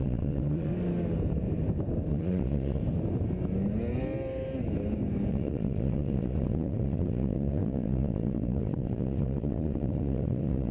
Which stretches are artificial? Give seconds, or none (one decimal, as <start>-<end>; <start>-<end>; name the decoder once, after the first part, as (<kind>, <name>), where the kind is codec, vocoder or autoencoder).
0.0-0.7 (vocoder, Vocos); 2.1-2.8; 5.3-10.7